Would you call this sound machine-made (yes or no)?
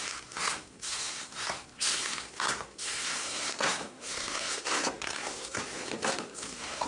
yes